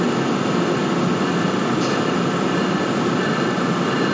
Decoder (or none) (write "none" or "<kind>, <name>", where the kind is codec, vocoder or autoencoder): none